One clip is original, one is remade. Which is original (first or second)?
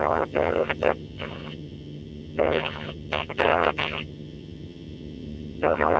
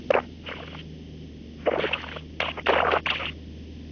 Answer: second